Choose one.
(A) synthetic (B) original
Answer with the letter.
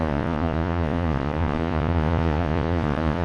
A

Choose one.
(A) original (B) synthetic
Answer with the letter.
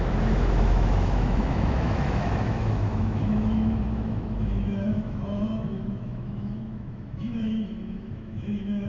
B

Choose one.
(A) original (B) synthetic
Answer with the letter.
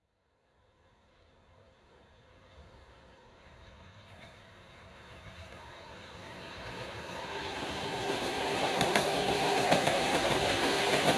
B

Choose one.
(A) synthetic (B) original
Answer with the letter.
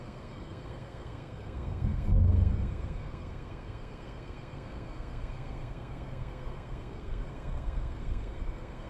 A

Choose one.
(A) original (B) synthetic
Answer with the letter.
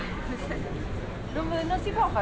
A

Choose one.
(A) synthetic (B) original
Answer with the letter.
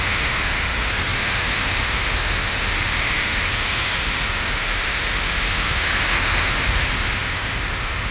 A